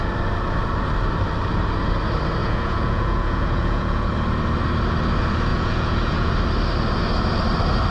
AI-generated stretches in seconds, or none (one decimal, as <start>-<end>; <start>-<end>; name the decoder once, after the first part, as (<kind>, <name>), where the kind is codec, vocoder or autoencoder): 2.4-4.1 (vocoder, Vocos); 5.5-6.3